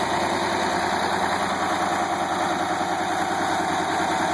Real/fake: real